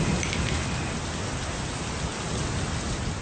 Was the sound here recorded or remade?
recorded